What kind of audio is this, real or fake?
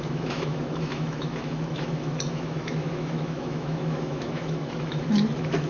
fake